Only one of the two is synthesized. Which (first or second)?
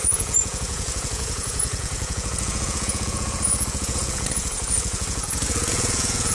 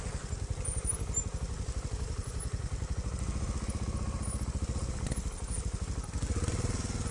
first